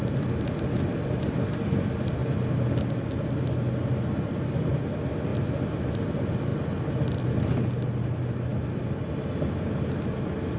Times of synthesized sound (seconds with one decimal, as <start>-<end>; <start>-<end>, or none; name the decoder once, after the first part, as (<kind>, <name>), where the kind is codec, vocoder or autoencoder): none